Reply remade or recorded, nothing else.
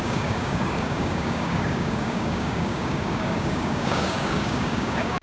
remade